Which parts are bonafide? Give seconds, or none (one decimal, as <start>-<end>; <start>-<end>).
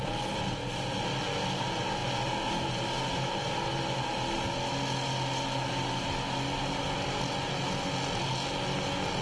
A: 0.0-9.2